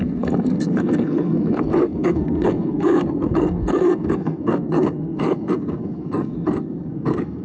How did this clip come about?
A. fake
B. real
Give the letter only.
A